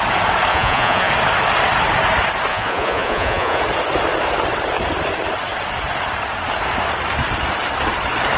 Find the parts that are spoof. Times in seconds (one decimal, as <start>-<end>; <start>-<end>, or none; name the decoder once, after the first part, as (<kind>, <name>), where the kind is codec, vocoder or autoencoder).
0.5-1.1 (vocoder, Vocos); 2.5-3.6